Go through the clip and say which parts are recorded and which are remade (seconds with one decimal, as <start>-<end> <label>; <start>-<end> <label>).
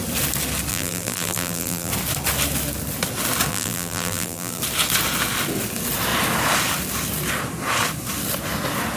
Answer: 0.0-0.7 recorded; 0.7-1.9 remade; 1.9-3.5 recorded; 3.5-4.6 remade; 4.6-9.0 recorded